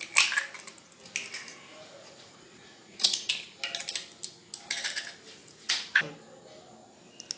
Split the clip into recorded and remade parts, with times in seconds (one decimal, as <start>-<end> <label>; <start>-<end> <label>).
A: 0.0-1.5 recorded; 1.5-3.3 remade; 3.3-5.4 recorded; 5.4-6.0 remade; 6.0-7.4 recorded